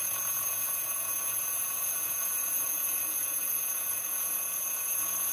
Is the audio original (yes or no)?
no